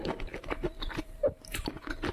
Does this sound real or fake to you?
fake